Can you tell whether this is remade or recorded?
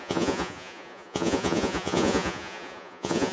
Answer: remade